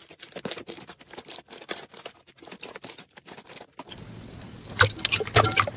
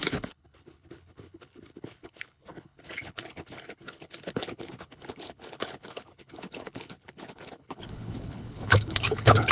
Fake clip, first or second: second